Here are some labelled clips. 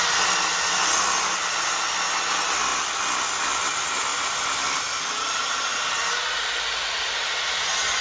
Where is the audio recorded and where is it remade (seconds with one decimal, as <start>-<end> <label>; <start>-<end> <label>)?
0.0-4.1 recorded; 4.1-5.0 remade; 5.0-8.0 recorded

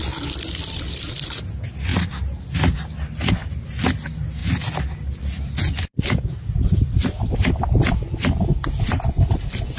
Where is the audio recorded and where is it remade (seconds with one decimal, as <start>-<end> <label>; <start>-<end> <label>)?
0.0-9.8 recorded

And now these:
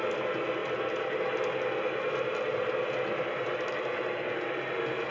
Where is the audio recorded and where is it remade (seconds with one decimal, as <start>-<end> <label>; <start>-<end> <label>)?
0.0-5.1 recorded